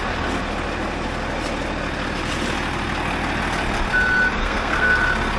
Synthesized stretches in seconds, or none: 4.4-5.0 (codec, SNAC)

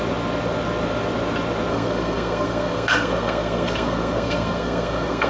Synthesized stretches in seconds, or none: 1.7-5.3 (codec, SNAC)

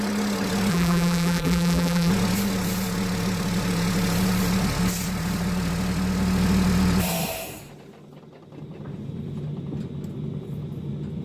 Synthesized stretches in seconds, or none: 0.7-2.1 (vocoder, BigVGAN v2)

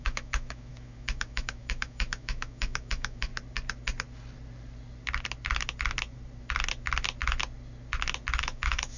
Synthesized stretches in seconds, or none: 0.0-3.3 (autoencoder, DAC-VAE); 8.4-9.0